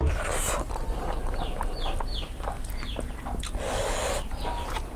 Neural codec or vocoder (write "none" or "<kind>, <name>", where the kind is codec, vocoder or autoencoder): none